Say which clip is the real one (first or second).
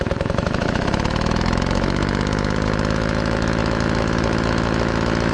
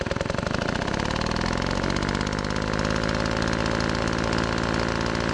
second